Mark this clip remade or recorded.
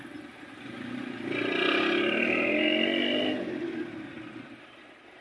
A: recorded